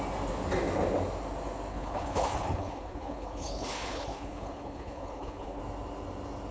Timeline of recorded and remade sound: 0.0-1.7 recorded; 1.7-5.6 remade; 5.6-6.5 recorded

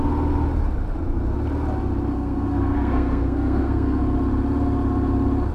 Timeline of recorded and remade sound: 0.0-2.1 recorded; 2.1-4.0 remade; 4.0-5.5 recorded

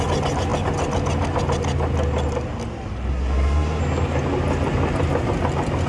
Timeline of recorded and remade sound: 0.0-3.1 recorded; 3.1-3.8 remade; 3.8-5.9 recorded

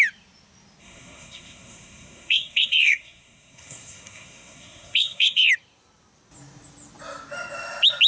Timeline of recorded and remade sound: 0.0-0.8 recorded; 0.8-5.5 remade; 5.5-8.1 recorded

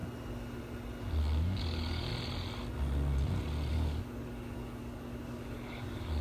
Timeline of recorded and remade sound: 0.0-1.2 recorded; 1.2-2.1 remade; 2.1-3.7 recorded; 3.7-6.2 remade

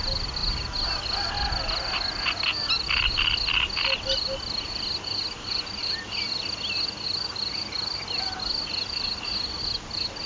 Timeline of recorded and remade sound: 0.0-10.3 recorded